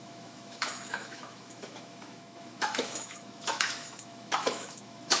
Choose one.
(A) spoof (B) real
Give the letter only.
A